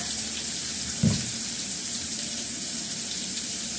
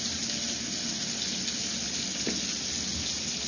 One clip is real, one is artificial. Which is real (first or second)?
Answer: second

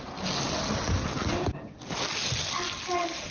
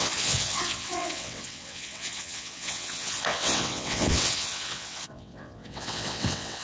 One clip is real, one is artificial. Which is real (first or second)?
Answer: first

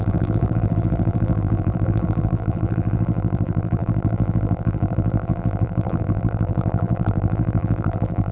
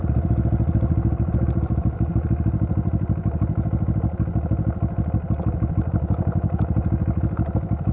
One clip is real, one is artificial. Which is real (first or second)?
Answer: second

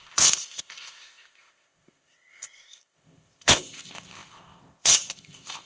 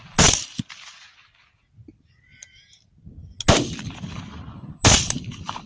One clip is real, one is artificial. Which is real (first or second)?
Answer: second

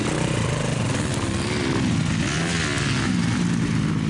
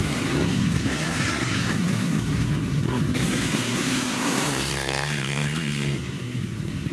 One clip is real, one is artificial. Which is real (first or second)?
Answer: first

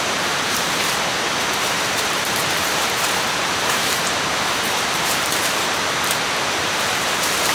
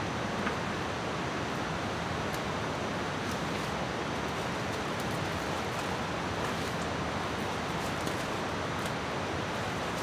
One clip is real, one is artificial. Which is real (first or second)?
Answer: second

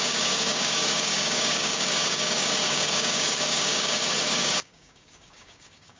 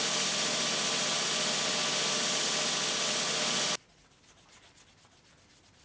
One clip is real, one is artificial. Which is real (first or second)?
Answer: second